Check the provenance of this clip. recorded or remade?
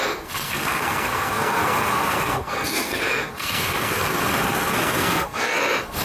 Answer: remade